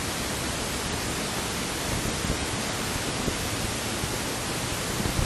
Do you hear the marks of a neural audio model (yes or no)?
no